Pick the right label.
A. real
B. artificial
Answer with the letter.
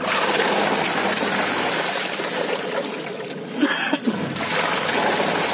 A